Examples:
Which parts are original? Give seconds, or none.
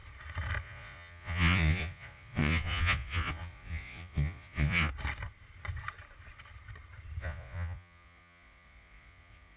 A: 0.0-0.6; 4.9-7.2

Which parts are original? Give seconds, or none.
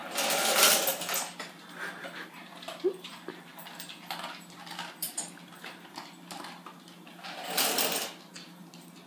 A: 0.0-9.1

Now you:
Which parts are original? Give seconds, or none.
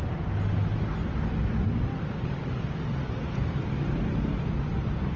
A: 0.0-5.2